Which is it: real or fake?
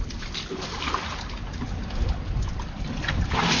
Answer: real